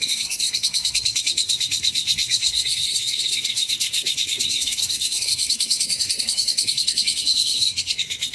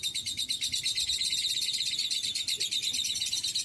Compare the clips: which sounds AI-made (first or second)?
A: first